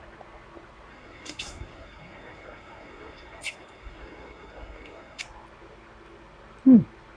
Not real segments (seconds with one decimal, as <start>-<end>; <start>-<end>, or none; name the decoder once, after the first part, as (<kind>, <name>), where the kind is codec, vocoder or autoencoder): 0.9-5.2 (codec, SNAC)